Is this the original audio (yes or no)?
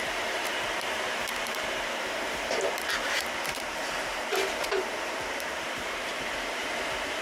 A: no